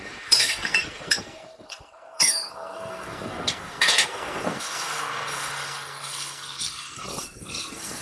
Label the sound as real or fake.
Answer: fake